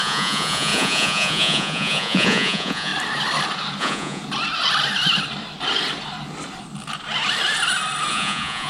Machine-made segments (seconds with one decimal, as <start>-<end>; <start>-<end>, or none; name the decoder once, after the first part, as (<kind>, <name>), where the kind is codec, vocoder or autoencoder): 0.0-2.9 (vocoder, Vocos); 3.8-4.2; 8.1-8.7